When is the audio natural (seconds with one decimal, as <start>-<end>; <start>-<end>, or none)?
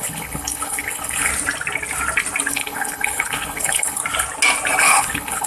1.3-2.5; 4.0-4.8